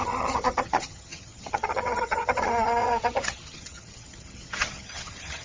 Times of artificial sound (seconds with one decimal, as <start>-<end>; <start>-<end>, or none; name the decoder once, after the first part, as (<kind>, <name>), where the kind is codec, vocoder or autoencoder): 0.0-5.4 (vocoder, HiFi-GAN)

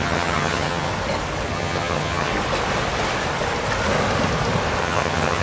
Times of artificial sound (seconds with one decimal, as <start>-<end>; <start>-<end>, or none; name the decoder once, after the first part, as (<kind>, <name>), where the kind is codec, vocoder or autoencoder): 0.0-0.9 (vocoder, HiFi-GAN); 1.5-2.3; 4.8-5.4

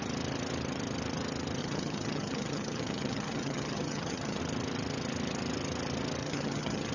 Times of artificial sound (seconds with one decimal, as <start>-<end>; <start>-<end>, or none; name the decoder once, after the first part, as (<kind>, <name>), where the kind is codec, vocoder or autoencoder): 1.6-4.4 (vocoder, HiFi-GAN); 6.2-6.9

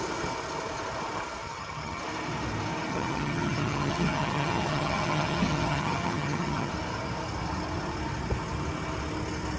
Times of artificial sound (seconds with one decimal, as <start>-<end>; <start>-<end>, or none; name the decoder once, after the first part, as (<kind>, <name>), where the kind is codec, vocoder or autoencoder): 1.4-2.0 (vocoder, HiFi-GAN); 2.9-6.7

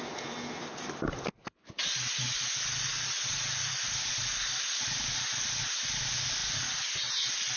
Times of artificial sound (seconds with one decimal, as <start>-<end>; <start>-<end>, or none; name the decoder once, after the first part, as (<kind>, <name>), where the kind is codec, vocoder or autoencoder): none